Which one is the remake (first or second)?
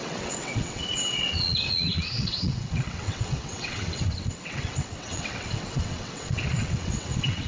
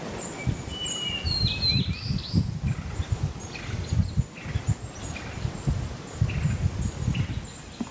first